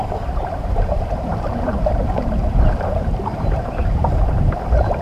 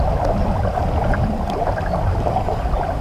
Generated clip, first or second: first